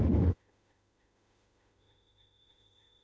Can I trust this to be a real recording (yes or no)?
no